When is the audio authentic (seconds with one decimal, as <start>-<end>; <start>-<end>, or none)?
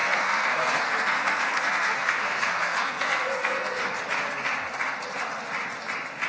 3.8-6.3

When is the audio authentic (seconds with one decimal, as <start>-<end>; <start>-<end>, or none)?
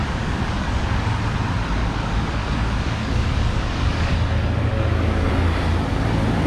1.2-1.8; 4.1-4.7; 5.3-6.5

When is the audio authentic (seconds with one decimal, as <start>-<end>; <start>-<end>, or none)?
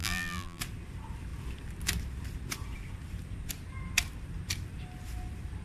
0.6-5.6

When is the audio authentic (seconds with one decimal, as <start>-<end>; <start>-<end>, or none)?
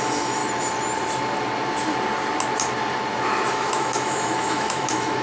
0.4-3.5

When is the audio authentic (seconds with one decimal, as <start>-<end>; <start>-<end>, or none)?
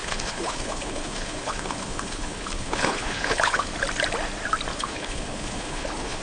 3.7-4.7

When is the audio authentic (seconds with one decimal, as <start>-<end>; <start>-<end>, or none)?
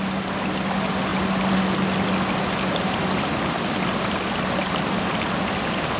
0.0-6.0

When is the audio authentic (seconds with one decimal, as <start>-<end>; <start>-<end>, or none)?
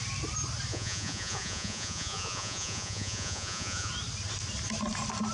0.0-0.7; 3.9-5.3